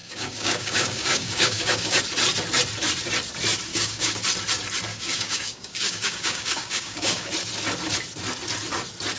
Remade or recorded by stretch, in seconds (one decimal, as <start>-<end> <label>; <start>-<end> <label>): 0.0-2.0 remade; 2.0-3.7 recorded; 3.7-4.2 remade; 4.2-4.9 recorded; 4.9-7.3 remade; 7.3-9.2 recorded

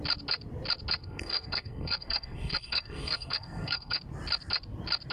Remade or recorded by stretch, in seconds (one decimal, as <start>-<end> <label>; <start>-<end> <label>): 0.0-1.0 recorded; 1.0-4.0 remade; 4.0-5.1 recorded

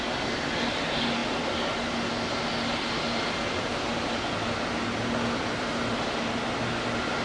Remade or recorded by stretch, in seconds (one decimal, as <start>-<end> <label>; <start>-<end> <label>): 0.0-7.2 recorded

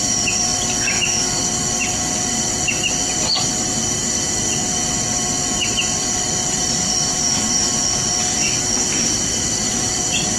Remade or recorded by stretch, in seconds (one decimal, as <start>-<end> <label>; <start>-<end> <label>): 0.0-0.5 remade; 0.5-5.6 recorded; 5.6-8.4 remade; 8.4-9.2 recorded; 9.2-10.4 remade

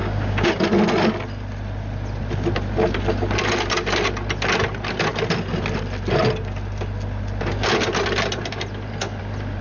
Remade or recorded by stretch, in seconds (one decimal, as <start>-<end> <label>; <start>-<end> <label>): 0.0-0.5 remade; 0.5-9.6 recorded

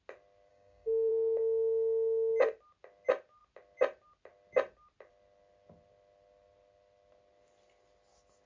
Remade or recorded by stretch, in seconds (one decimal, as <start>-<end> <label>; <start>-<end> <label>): 0.0-0.5 recorded; 0.5-1.1 remade; 1.1-8.5 recorded

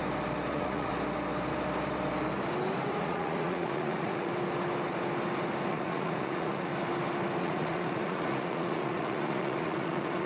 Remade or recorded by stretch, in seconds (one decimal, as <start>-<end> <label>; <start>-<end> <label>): 0.0-0.5 recorded; 0.5-0.9 remade; 0.9-3.0 recorded; 3.0-4.3 remade; 4.3-5.7 recorded; 5.7-6.7 remade; 6.7-7.4 recorded; 7.4-10.3 remade

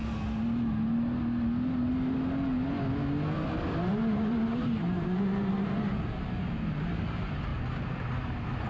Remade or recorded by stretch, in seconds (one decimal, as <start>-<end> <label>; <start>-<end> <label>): 0.0-3.9 recorded; 3.9-5.9 remade; 5.9-7.5 recorded; 7.5-8.1 remade; 8.1-8.7 recorded